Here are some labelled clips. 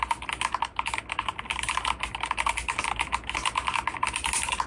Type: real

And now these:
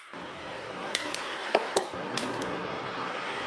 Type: fake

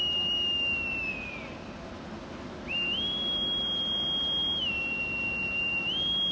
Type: real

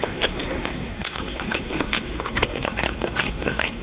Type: fake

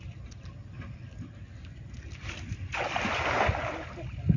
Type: real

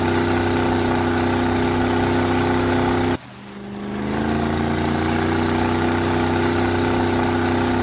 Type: real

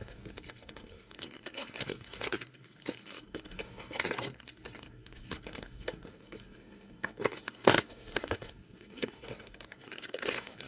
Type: fake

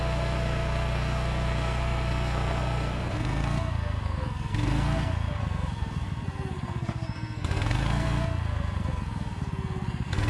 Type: fake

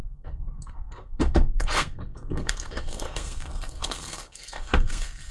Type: fake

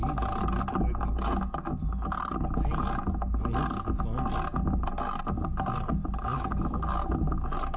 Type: real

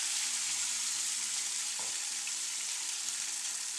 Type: real